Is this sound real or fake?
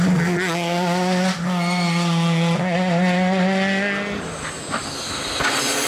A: real